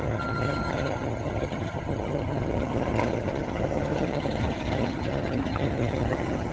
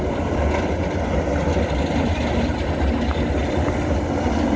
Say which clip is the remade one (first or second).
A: first